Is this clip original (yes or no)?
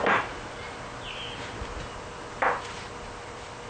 yes